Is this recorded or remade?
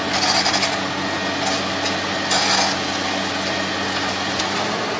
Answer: recorded